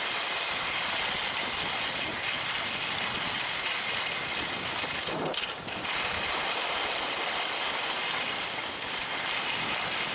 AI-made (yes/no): no